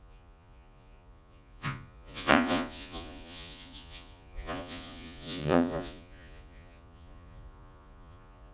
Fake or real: fake